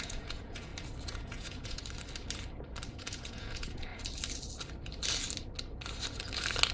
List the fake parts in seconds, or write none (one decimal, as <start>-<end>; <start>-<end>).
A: 0.0-0.7; 1.2-1.8; 2.9-3.9